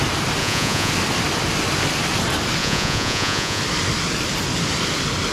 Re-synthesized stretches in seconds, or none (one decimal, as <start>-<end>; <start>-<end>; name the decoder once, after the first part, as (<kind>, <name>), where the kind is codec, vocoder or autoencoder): 0.4-0.9 (vocoder, Vocos); 2.6-3.6